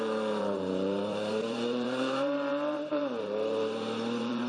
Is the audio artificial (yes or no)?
yes